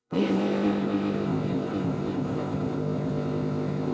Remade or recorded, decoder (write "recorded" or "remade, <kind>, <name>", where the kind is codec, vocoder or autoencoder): remade, codec, ZipCodec